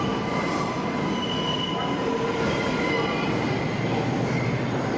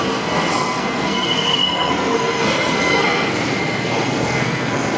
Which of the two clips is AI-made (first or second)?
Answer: second